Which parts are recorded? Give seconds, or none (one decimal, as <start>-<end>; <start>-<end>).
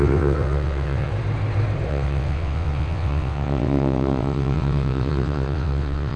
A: 1.1-1.9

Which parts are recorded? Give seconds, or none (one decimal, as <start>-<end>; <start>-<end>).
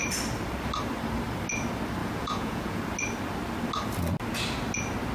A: 0.0-2.0; 2.8-5.1